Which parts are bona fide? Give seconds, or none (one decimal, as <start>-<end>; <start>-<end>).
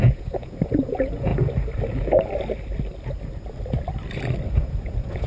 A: 1.3-4.5